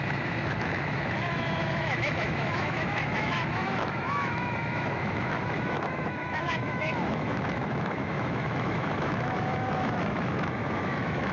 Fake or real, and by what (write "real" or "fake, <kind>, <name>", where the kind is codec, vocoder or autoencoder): fake, autoencoder, DAC-VAE